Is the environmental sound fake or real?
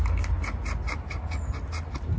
real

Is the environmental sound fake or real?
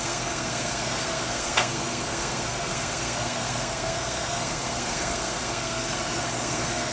fake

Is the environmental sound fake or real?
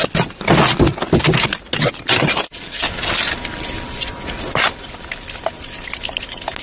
real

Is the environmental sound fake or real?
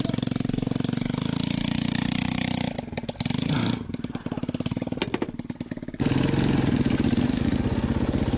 real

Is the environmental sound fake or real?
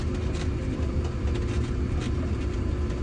real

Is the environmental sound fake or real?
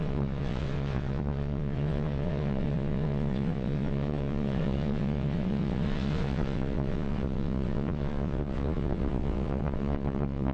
fake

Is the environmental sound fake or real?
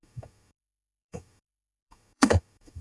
fake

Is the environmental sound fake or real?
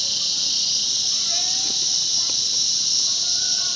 real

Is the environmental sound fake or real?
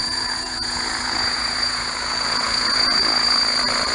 fake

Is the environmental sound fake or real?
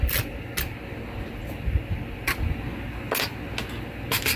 real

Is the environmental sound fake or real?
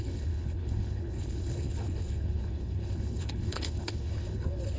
fake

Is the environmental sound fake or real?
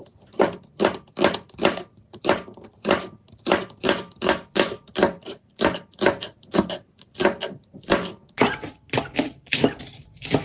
fake